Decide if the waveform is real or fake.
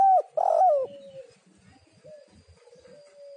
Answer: real